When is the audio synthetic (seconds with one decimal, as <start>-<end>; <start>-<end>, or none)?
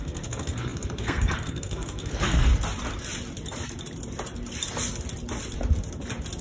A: 0.0-2.5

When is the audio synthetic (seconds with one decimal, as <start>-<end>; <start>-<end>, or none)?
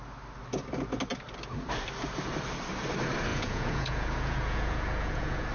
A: 3.3-5.5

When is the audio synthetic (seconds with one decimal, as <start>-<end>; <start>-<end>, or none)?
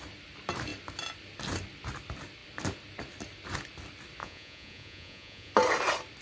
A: 4.2-5.5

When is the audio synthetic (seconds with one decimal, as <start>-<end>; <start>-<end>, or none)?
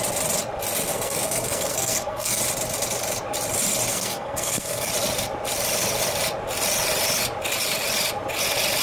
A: 0.9-2.4; 3.9-4.9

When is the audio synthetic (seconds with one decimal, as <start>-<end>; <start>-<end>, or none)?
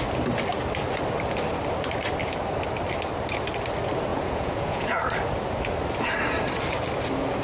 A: 4.1-5.0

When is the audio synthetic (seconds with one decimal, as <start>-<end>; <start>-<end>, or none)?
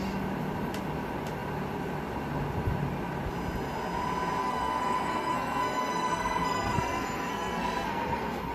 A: 4.4-8.5